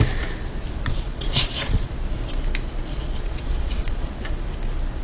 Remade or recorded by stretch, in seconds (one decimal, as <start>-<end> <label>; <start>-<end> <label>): 0.0-0.9 recorded; 0.9-1.9 remade; 1.9-2.9 recorded; 2.9-4.1 remade; 4.1-5.0 recorded